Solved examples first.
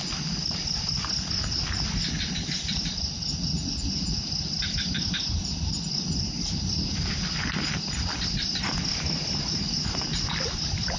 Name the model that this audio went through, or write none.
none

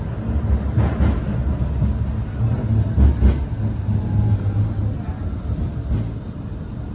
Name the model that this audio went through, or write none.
none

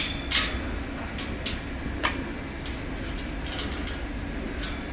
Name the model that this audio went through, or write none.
none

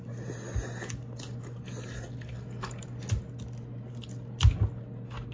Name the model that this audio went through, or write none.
none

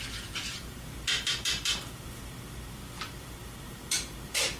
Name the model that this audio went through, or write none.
vocoder, BigVGAN v2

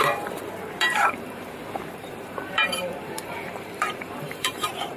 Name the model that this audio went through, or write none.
vocoder, BigVGAN v2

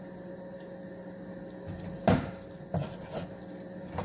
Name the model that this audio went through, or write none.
none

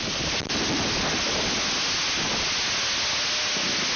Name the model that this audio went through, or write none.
none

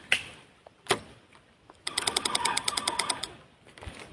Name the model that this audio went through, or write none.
none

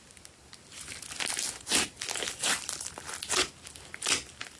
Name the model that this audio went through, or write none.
none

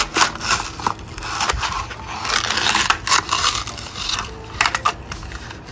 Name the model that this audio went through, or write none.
none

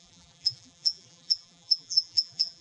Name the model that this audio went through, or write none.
vocoder, BigVGAN v2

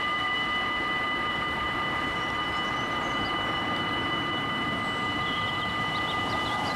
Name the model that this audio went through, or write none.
vocoder, BigVGAN v2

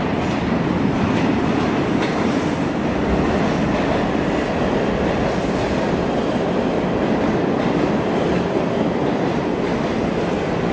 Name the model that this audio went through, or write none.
none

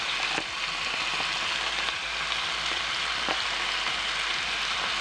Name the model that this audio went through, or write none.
none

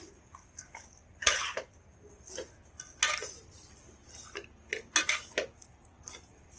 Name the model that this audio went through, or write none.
none